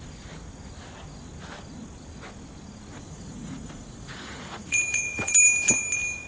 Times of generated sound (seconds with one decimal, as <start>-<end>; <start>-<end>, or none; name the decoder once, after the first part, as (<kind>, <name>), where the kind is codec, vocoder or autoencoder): 2.9-5.3 (vocoder, Vocos)